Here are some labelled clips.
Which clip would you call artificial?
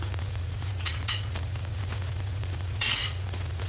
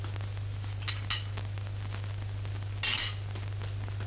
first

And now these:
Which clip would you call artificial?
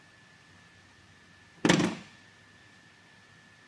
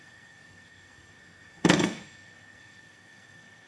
second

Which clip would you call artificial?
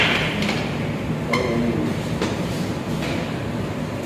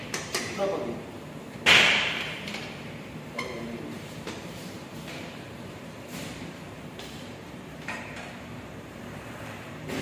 second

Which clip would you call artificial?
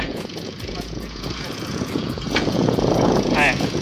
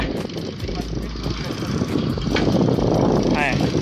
first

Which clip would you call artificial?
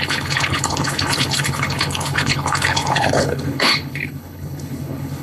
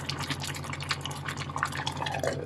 first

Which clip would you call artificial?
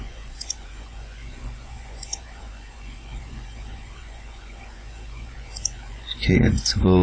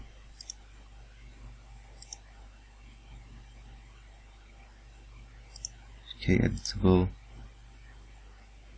first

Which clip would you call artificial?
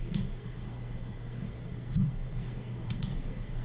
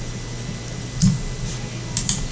first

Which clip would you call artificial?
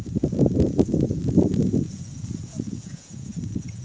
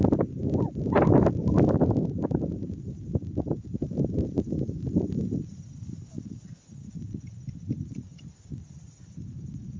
first